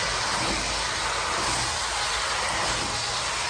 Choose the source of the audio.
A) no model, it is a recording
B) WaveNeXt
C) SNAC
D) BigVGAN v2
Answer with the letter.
A